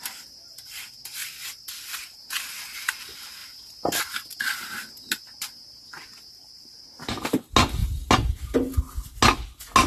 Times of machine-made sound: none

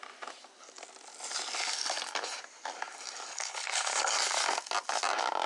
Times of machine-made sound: 3.3-3.9

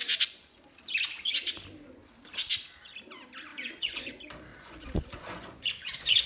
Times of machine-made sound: 0.0-0.6; 3.5-4.1; 4.5-6.3